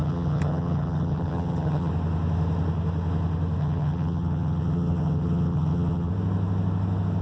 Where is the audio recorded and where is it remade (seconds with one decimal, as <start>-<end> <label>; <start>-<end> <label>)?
0.0-1.9 remade; 1.9-3.6 recorded; 3.6-6.1 remade; 6.1-7.2 recorded